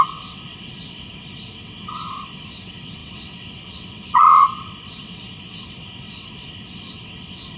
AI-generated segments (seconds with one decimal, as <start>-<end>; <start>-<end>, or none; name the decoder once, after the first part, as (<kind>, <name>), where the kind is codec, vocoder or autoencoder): 0.0-7.6 (vocoder, WaveNeXt)